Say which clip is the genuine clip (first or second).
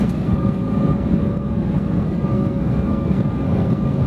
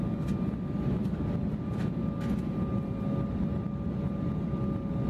second